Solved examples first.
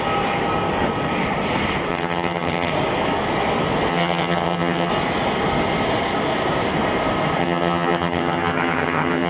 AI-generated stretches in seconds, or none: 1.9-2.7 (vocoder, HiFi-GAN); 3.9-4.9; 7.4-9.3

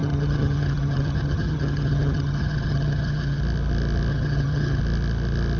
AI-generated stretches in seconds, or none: 0.0-3.4 (vocoder, HiFi-GAN); 4.1-4.8